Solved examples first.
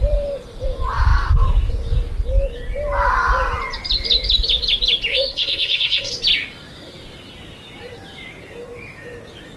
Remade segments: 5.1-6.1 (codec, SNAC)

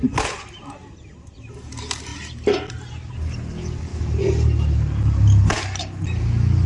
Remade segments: none

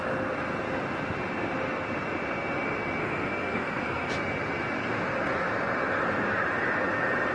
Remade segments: 3.0-4.1 (codec, SNAC)

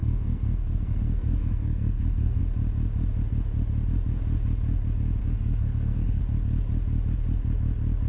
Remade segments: 0.0-2.4 (codec, SNAC); 5.2-6.2

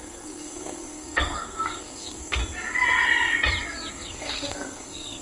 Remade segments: 0.0-2.4 (codec, SNAC); 3.9-5.2

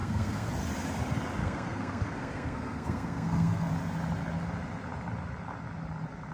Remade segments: 0.0-0.5 (codec, SNAC); 1.4-3.7

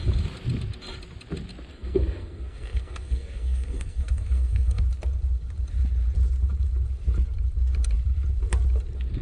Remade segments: 1.7-4.8 (codec, SNAC)